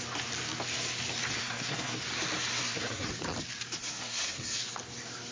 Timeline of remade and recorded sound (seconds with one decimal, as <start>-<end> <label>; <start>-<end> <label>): 0.0-1.4 recorded; 1.4-2.0 remade; 2.0-2.5 recorded; 2.5-3.1 remade; 3.1-3.8 recorded; 3.8-4.6 remade; 4.6-5.3 recorded